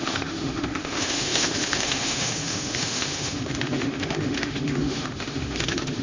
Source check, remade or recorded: remade